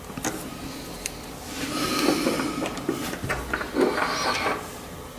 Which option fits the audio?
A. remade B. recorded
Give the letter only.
B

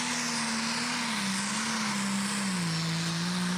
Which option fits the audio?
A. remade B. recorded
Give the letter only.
B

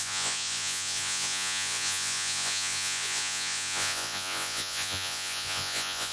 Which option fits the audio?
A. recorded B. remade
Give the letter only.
B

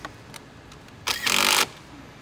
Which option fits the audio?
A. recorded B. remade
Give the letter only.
A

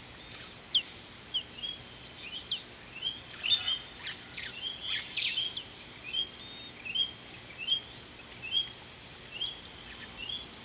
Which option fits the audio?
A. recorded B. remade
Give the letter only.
A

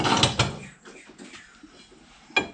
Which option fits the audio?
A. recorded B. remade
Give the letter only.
A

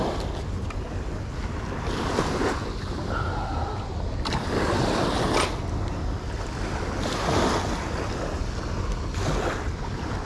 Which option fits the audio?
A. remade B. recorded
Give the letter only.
B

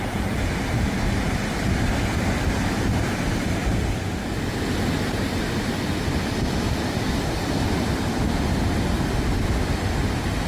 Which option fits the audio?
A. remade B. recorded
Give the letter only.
B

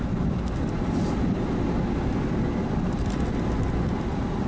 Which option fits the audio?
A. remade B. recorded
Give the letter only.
B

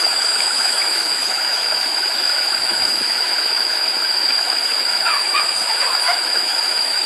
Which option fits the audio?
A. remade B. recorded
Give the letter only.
A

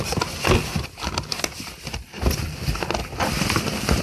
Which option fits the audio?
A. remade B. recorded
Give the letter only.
B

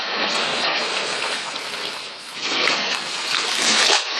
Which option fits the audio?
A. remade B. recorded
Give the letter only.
A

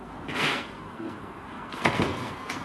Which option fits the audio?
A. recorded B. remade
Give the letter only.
B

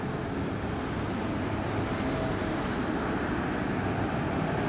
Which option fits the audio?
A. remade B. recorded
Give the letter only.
B